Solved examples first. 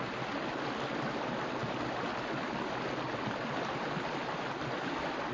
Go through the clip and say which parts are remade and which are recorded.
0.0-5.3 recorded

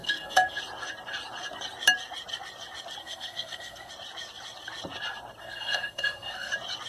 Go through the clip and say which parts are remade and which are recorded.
0.0-0.6 remade; 0.6-3.0 recorded; 3.0-3.9 remade; 3.9-5.4 recorded; 5.4-6.5 remade; 6.5-6.9 recorded

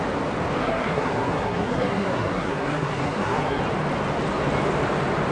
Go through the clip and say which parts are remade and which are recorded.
0.0-0.6 recorded; 0.6-3.6 remade; 3.6-5.3 recorded

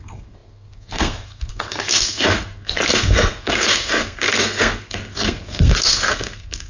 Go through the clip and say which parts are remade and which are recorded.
0.0-6.7 remade

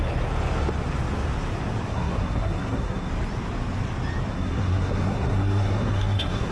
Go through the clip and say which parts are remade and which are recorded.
0.0-1.9 recorded; 1.9-3.1 remade; 3.1-4.3 recorded; 4.3-6.5 remade

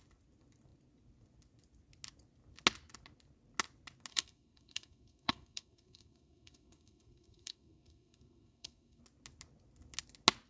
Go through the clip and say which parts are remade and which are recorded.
0.0-4.1 recorded; 4.1-9.0 remade; 9.0-10.5 recorded

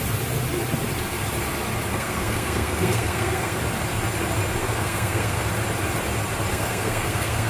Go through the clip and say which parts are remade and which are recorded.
0.0-1.9 recorded; 1.9-3.6 remade; 3.6-4.6 recorded; 4.6-5.5 remade; 5.5-6.5 recorded; 6.5-7.5 remade

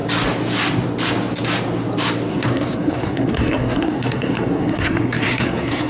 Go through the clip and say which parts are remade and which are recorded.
0.0-2.3 recorded; 2.3-5.9 remade